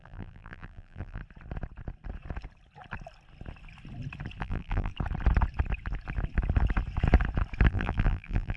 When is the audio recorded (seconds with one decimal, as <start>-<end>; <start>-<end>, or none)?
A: 1.2-4.4; 4.9-7.7